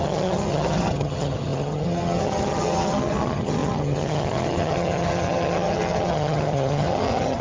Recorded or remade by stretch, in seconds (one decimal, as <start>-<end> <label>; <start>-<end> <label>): 0.0-7.4 remade